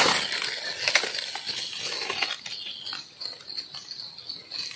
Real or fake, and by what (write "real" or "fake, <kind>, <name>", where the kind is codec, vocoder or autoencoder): real